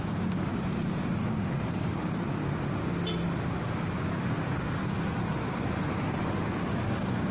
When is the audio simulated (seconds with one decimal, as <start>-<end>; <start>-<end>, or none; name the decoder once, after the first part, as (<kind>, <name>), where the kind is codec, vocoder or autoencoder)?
0.0-0.5 (codec, DAC); 1.1-2.0; 3.6-4.8; 6.8-7.3